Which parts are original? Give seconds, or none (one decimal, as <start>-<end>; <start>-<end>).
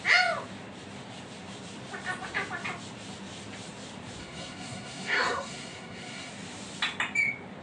0.0-4.2; 6.3-7.6